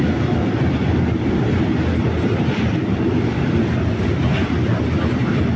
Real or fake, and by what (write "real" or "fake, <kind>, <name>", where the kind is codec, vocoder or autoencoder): real